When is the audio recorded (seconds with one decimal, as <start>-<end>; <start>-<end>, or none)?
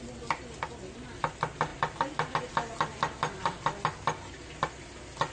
0.0-5.3